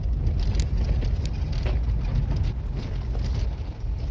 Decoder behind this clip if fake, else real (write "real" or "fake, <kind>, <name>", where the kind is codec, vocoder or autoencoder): real